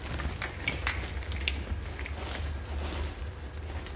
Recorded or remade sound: recorded